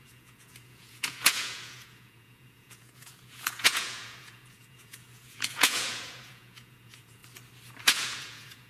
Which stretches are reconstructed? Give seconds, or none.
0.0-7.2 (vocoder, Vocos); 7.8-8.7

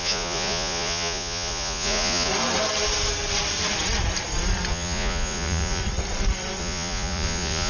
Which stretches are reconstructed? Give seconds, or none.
0.0-2.3 (vocoder, Vocos); 4.7-5.8; 6.6-7.7

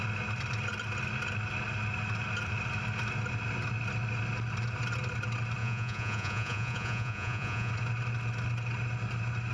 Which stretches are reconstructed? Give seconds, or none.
5.6-7.7 (vocoder, Vocos)

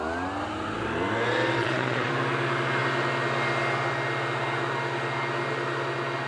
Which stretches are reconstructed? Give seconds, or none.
1.6-2.1 (vocoder, Vocos)

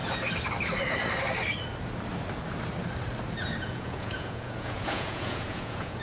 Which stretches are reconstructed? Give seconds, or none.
3.6-6.0 (vocoder, Vocos)

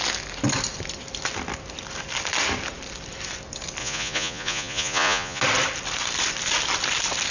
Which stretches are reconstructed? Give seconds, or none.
3.8-5.4 (vocoder, Vocos)